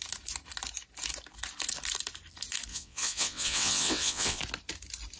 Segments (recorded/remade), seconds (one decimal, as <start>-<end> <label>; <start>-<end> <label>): 0.0-2.7 recorded; 2.7-4.4 remade; 4.4-5.2 recorded